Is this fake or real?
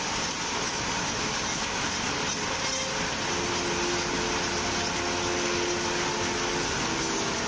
real